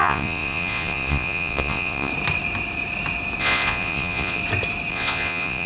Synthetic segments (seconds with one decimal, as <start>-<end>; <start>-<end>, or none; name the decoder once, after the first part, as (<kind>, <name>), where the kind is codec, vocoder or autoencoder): 0.0-2.1 (vocoder, Vocos); 3.4-4.4; 4.9-5.7